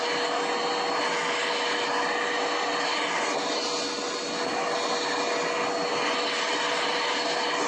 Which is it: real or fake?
real